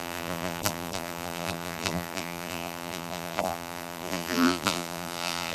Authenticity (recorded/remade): remade